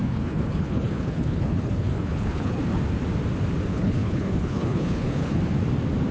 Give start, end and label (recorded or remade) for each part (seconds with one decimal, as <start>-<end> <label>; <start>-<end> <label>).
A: 0.0-2.6 remade; 2.6-3.7 recorded; 3.7-5.4 remade; 5.4-6.1 recorded

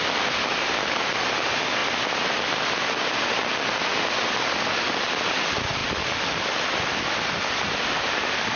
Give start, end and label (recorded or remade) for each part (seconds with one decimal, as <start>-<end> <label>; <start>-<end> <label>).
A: 0.0-8.6 recorded

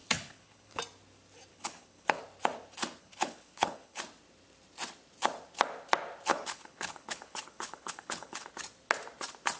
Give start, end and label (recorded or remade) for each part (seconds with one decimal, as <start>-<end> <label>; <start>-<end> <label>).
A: 0.0-0.8 remade; 0.8-1.5 recorded; 1.5-2.2 remade; 2.2-3.0 recorded; 3.0-4.0 remade; 4.0-6.3 recorded; 6.3-8.5 remade; 8.5-9.6 recorded

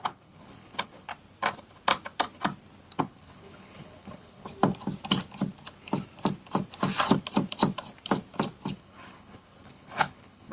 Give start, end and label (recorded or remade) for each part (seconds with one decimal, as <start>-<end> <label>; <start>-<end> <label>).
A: 0.0-1.1 remade; 1.1-3.0 recorded; 3.0-4.4 remade; 4.4-8.8 recorded; 8.8-10.5 remade

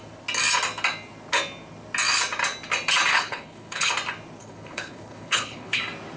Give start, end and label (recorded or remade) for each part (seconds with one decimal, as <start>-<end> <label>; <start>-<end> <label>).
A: 0.0-3.1 recorded; 3.1-3.9 remade; 3.9-4.4 recorded; 4.4-5.8 remade; 5.8-6.2 recorded

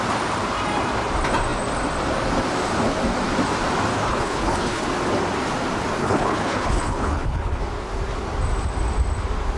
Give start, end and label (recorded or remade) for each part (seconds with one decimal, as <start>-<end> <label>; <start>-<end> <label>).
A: 0.0-3.9 recorded; 3.9-4.8 remade; 4.8-6.0 recorded; 6.0-7.6 remade; 7.6-9.6 recorded

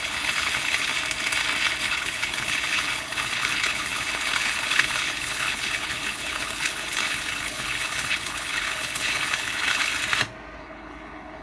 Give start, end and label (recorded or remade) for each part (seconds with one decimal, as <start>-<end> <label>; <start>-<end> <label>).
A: 0.0-0.9 remade; 0.9-1.8 recorded; 1.8-9.9 remade; 9.9-10.6 recorded; 10.6-11.4 remade